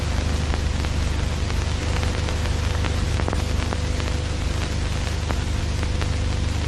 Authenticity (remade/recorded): recorded